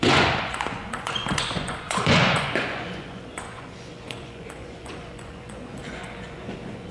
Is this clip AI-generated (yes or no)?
yes